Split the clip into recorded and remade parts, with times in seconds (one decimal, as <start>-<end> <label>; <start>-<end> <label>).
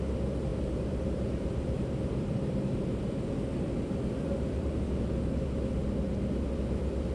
0.0-0.5 recorded; 0.5-4.8 remade; 4.8-7.1 recorded